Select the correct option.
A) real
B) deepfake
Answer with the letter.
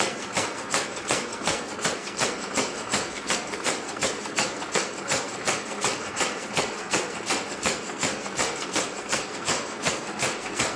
B